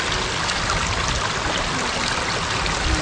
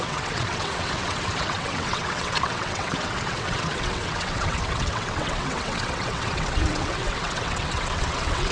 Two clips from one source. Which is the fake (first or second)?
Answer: second